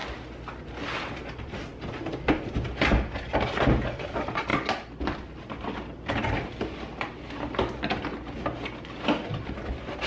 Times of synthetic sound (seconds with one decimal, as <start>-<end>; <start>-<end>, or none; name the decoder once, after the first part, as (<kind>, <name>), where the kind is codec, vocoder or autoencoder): none